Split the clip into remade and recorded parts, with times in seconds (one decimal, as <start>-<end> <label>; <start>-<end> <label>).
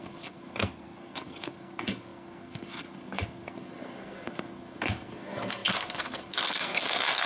0.0-7.3 remade